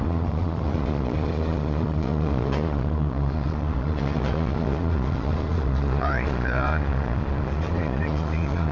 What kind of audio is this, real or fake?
fake